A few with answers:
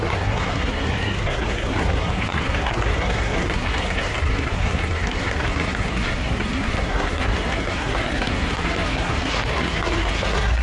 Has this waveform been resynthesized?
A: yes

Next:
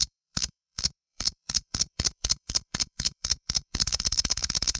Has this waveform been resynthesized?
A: yes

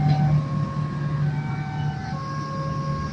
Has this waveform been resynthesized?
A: no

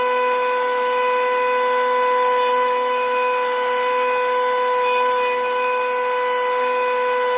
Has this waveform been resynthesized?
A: no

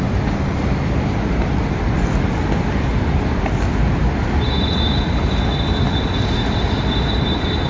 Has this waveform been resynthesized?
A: no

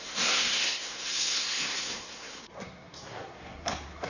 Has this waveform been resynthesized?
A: yes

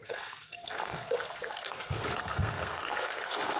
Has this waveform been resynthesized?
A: yes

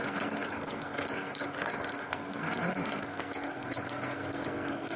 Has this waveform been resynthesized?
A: yes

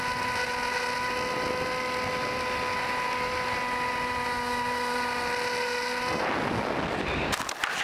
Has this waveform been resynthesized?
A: no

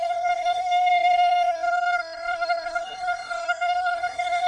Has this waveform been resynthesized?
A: yes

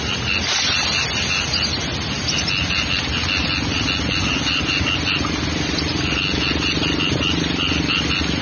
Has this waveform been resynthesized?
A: no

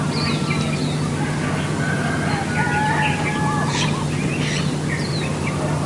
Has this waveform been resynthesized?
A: no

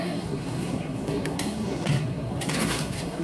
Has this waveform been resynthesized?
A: yes